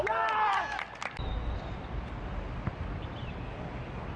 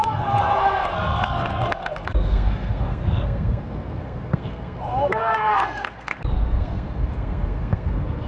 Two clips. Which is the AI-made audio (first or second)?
second